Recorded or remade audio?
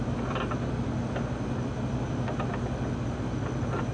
recorded